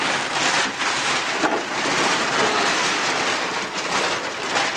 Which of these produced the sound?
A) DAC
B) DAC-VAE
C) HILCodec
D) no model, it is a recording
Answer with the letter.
D